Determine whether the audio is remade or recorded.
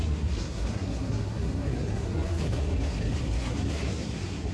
remade